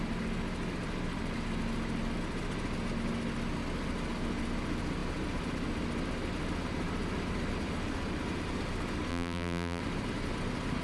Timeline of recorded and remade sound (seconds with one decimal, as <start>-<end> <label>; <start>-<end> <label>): 0.0-9.1 recorded; 9.1-9.8 remade; 9.8-10.8 recorded